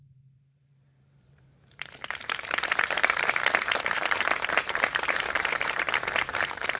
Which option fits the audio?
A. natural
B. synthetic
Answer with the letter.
B